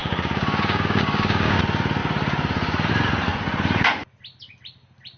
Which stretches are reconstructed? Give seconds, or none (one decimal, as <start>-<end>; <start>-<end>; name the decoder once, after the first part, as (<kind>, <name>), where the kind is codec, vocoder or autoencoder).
0.0-1.6 (codec, DAC)